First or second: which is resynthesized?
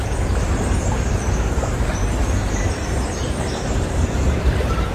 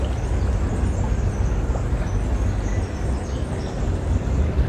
first